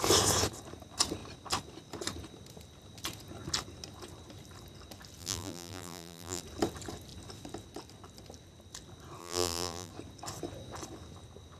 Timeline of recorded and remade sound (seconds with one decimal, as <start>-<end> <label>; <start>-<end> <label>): 0.0-5.2 recorded; 5.2-6.4 remade; 6.4-9.2 recorded; 9.2-9.9 remade; 9.9-11.6 recorded